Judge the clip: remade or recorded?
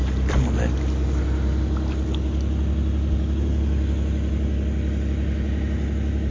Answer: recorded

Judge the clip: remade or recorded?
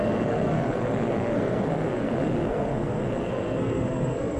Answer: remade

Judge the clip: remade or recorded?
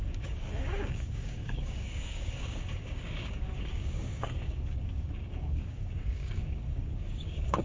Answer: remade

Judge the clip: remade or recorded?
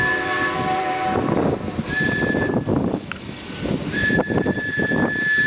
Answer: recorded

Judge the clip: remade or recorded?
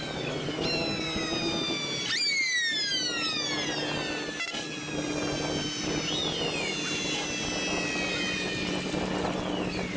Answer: recorded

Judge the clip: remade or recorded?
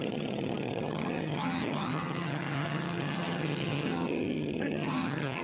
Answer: remade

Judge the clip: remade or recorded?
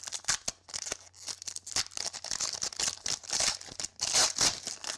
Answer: recorded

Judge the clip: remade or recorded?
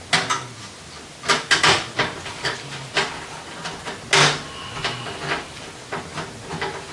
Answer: recorded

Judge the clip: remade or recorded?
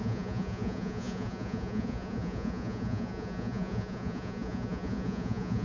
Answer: remade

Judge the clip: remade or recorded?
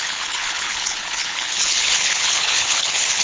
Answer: remade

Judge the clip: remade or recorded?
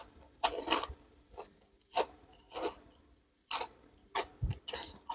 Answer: recorded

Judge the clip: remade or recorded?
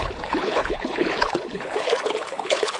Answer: remade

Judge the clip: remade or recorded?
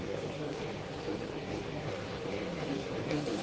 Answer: remade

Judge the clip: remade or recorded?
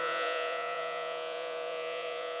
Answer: remade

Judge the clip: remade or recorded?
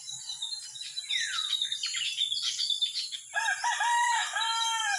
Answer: recorded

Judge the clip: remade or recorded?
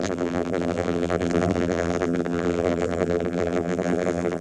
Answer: remade